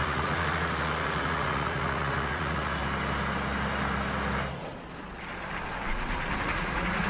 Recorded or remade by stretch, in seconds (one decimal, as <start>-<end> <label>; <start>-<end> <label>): 0.0-2.8 remade; 2.8-6.4 recorded; 6.4-7.1 remade